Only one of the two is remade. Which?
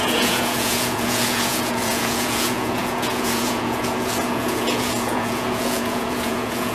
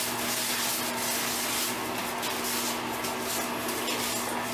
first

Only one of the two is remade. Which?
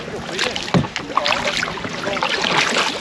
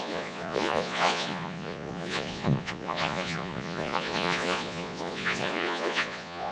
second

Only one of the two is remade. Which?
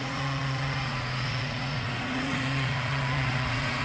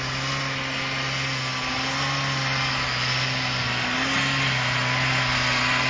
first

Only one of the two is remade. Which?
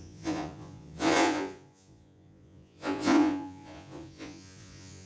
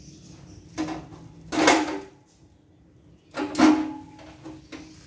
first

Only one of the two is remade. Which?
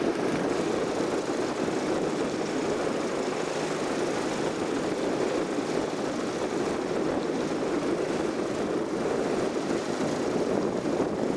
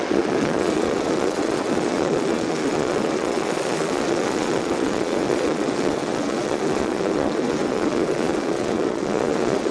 second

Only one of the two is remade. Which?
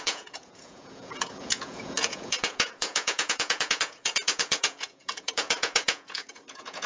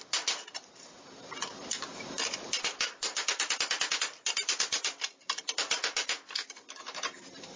first